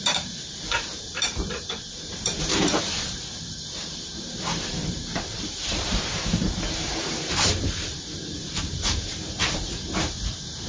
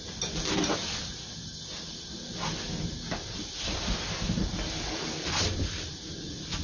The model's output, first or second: first